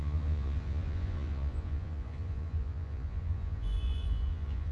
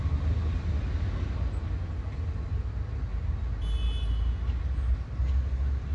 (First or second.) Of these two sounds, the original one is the second